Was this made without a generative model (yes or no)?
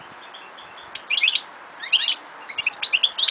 yes